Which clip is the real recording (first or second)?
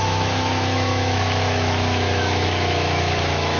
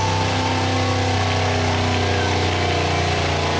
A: second